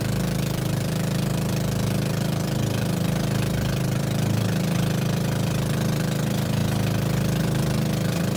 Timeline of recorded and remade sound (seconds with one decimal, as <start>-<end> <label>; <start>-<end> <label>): 0.0-6.6 remade; 6.6-7.4 recorded; 7.4-8.4 remade